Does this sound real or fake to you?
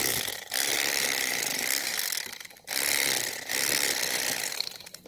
real